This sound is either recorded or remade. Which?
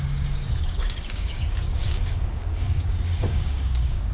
remade